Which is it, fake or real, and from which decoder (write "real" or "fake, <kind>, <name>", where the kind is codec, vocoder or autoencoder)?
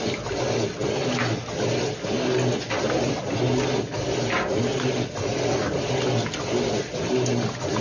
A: real